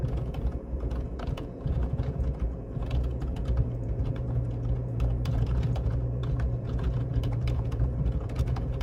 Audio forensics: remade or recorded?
remade